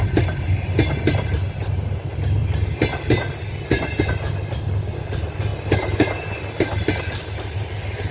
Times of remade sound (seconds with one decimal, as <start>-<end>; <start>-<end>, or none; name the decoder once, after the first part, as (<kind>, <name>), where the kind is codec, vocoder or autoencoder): none

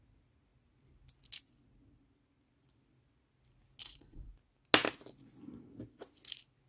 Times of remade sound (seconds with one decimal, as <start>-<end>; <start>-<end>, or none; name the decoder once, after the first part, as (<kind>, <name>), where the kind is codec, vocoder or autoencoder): 3.8-4.3 (vocoder, Vocos)

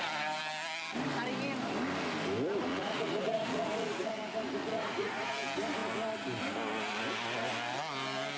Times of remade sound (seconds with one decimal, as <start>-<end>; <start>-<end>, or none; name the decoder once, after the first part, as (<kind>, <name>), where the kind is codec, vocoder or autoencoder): 2.7-4.1 (vocoder, Vocos); 4.6-5.3

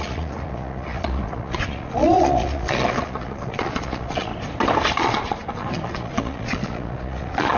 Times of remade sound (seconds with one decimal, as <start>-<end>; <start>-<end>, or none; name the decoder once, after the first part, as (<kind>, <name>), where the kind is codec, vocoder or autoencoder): 0.0-4.3 (vocoder, Vocos); 4.9-7.6

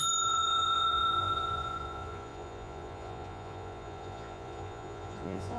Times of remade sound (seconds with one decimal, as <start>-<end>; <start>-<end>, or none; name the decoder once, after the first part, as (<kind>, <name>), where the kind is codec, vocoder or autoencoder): 0.0-5.6 (vocoder, Vocos)